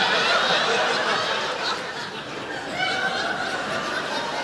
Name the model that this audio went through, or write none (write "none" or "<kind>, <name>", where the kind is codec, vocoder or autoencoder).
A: none